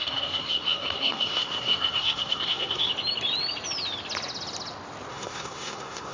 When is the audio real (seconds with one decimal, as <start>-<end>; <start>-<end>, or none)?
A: 2.9-5.1